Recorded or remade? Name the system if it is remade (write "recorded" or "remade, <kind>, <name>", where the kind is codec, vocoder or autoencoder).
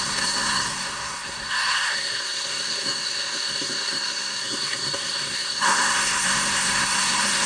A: remade, codec, SNAC